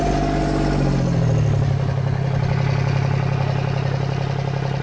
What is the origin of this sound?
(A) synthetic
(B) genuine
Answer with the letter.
B